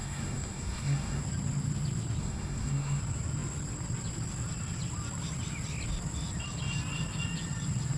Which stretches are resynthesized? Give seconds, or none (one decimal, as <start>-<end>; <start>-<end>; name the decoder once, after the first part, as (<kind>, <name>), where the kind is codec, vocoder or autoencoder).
0.0-1.2 (codec, SNAC); 2.2-3.0